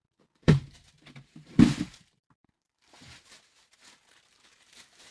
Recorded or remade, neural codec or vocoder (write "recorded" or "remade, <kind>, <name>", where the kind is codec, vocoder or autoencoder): remade, vocoder, BigVGAN v2